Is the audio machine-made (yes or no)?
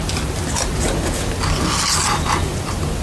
no